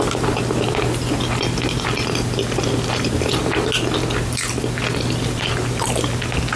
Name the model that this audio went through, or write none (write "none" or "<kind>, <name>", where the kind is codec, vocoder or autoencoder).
none